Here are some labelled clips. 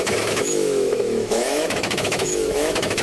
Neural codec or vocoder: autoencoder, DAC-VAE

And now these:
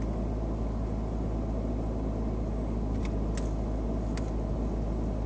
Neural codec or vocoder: none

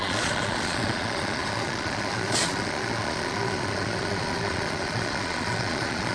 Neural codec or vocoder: vocoder, Vocos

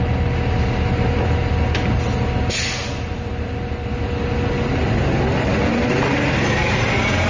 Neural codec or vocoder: none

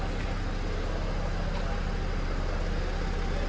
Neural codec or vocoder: none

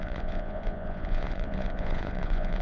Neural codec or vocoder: vocoder, Vocos